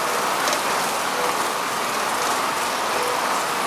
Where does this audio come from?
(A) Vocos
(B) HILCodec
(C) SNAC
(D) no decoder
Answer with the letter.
D